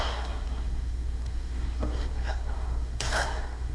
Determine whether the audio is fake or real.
fake